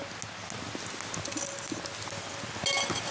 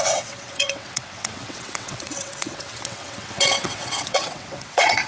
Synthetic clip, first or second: second